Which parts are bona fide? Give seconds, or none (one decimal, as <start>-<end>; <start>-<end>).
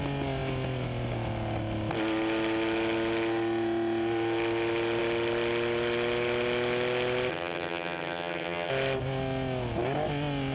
0.0-7.3; 8.7-10.5